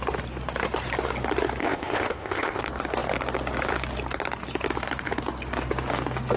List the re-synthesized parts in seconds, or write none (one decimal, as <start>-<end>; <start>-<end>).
1.6-2.6